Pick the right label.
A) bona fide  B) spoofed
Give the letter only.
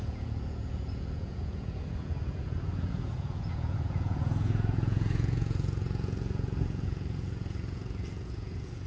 B